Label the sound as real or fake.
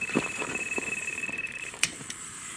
fake